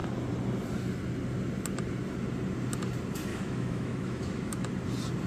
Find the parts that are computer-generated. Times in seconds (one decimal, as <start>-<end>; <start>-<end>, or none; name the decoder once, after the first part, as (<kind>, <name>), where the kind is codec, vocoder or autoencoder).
3.3-4.7 (autoencoder, DAC-VAE)